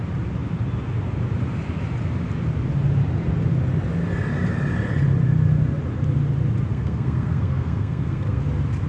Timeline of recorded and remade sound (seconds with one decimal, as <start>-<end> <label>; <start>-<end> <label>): 0.0-6.7 recorded; 6.7-8.4 remade; 8.4-8.9 recorded